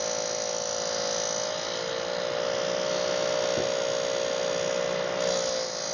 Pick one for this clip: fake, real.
real